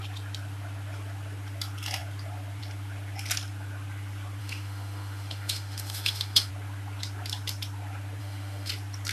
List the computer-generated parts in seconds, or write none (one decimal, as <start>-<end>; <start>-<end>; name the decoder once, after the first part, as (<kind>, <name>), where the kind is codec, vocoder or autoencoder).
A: 4.4-6.5 (autoencoder, DAC-VAE); 8.2-8.7